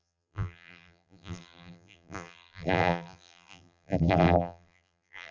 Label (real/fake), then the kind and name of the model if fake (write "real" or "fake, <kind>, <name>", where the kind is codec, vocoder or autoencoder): fake, vocoder, BigVGAN v2